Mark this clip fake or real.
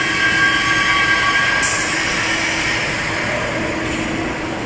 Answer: real